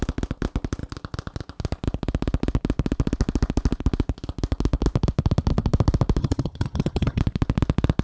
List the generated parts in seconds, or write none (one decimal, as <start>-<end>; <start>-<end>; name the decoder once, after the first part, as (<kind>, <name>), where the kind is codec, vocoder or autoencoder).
6.2-7.2 (vocoder, HiFi-GAN)